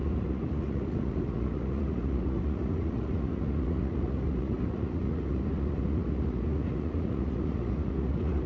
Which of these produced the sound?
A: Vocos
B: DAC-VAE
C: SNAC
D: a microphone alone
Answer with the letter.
A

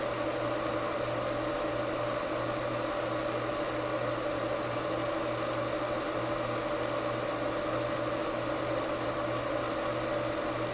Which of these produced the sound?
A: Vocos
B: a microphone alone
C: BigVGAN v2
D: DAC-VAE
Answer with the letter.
B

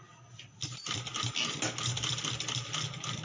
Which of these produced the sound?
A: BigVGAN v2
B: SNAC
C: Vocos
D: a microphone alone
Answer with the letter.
D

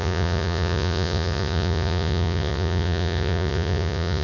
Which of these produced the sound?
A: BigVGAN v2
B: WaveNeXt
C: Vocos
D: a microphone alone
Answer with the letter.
C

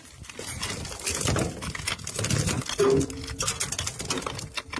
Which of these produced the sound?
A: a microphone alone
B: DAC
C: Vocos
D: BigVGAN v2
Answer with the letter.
A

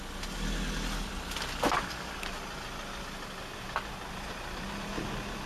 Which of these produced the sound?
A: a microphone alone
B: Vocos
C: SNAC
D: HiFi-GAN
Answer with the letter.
A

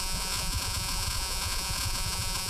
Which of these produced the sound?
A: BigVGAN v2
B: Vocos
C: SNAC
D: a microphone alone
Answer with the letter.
B